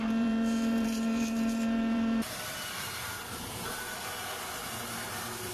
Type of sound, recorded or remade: remade